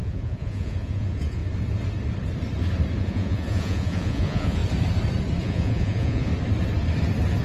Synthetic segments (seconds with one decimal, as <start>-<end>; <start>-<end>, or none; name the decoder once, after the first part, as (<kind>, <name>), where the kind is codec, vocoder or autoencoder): 0.0-1.4 (vocoder, Vocos); 3.0-4.6; 5.4-6.3